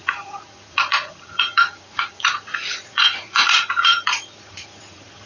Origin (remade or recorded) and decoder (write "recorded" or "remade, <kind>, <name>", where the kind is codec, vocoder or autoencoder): remade, vocoder, Vocos